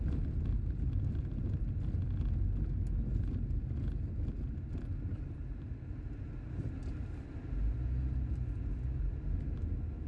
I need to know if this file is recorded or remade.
recorded